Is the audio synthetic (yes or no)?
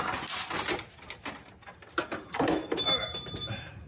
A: no